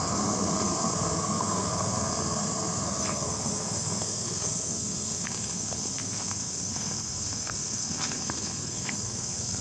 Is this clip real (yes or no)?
no